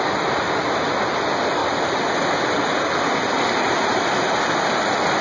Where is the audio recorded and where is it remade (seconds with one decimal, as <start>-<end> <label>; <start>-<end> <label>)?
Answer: 0.0-1.6 recorded; 1.6-4.7 remade; 4.7-5.2 recorded